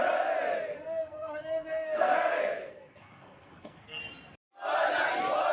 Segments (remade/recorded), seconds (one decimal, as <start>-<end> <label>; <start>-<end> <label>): 0.0-0.7 recorded; 0.7-4.0 remade; 4.0-5.5 recorded